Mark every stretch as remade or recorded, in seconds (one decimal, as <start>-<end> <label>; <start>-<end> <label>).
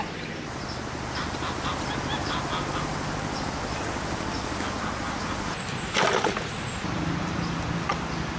0.0-8.4 recorded